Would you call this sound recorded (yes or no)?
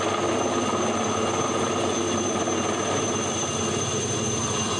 yes